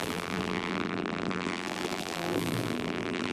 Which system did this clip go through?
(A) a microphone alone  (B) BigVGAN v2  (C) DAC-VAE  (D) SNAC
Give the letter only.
B